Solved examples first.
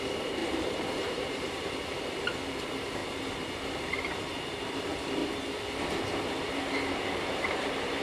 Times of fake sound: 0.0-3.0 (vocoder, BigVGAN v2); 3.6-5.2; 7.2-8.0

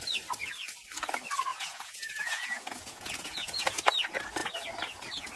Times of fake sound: 1.5-3.9 (vocoder, Vocos)

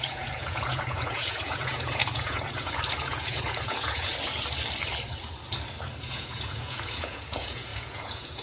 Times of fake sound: 0.0-4.1 (vocoder, Vocos); 6.0-8.4